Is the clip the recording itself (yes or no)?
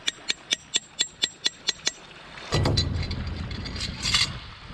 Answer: yes